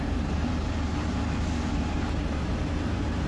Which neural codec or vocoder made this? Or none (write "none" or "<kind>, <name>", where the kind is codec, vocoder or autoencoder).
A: vocoder, BigVGAN v2